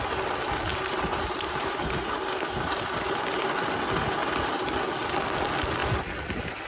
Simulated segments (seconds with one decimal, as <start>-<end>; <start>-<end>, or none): 0.7-3.2; 4.2-4.8